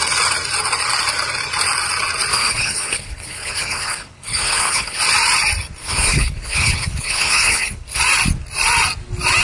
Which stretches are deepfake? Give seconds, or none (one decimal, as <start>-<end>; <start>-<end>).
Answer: 2.3-5.0; 5.8-8.0